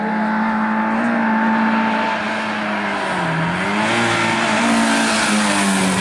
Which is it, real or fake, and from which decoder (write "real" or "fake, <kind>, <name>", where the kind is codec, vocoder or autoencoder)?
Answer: real